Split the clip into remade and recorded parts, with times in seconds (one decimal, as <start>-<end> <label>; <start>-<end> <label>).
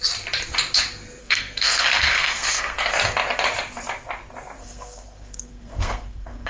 0.0-1.2 recorded; 1.2-2.9 remade; 2.9-4.6 recorded; 4.6-6.5 remade